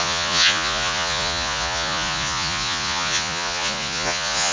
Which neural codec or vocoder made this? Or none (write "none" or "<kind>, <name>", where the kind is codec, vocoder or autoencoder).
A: vocoder, Vocos